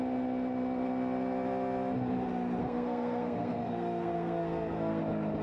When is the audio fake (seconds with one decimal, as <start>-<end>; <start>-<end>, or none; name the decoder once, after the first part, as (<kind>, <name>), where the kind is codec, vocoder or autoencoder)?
2.6-5.0 (codec, SNAC)